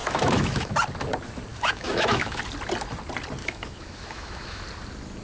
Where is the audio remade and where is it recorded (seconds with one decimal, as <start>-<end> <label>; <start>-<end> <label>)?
0.0-0.7 remade; 0.7-1.5 recorded; 1.5-2.4 remade; 2.4-3.4 recorded; 3.4-4.6 remade; 4.6-5.2 recorded